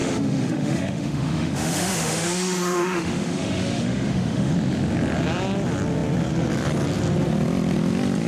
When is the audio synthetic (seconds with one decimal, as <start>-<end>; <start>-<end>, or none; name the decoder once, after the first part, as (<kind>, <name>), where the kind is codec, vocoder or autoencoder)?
0.0-4.5 (autoencoder, DAC-VAE)